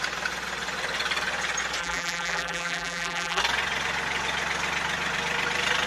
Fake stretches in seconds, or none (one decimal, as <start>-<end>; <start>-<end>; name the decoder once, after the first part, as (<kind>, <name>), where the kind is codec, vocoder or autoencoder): 1.8-3.4 (vocoder, BigVGAN v2)